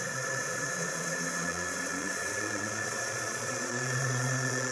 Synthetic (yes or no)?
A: yes